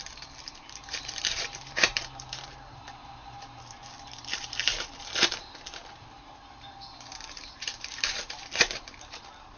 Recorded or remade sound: remade